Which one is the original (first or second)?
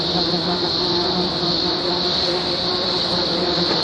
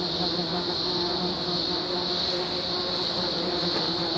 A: second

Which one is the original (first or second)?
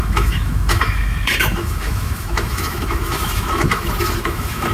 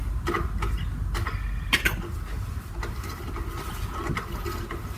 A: second